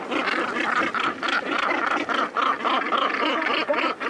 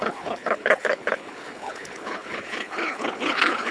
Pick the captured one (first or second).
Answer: first